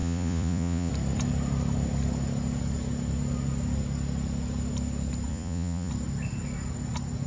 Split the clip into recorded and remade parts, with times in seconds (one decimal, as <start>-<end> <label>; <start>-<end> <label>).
0.0-0.9 remade; 0.9-5.3 recorded; 5.3-5.9 remade; 5.9-7.3 recorded